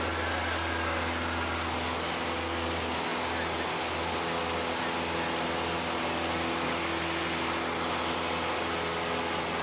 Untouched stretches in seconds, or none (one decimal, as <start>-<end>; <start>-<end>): 0.0-9.6